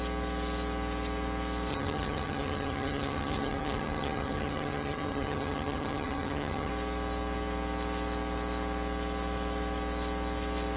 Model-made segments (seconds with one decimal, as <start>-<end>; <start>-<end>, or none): 1.7-6.7